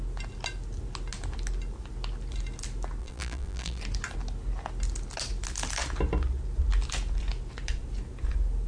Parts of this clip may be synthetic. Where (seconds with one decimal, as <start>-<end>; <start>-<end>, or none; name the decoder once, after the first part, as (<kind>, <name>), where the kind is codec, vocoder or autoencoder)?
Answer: 3.0-3.8 (vocoder, BigVGAN v2)